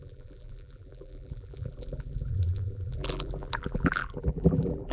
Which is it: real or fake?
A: fake